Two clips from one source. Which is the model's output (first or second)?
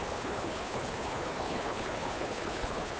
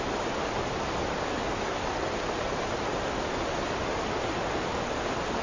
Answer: first